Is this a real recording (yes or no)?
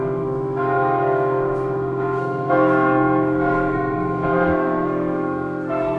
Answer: no